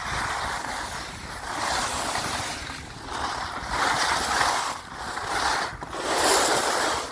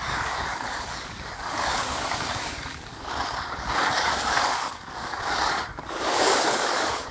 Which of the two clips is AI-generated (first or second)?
second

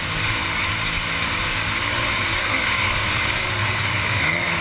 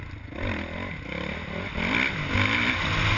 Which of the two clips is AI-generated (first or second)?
first